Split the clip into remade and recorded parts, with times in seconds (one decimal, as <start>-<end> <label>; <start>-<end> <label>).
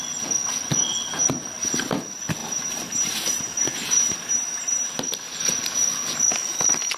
0.0-2.4 recorded; 2.4-5.0 remade; 5.0-7.0 recorded